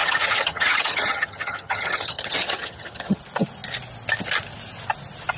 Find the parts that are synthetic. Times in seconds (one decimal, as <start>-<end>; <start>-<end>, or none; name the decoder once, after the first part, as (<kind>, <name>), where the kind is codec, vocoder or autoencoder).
0.0-3.2 (vocoder, HiFi-GAN)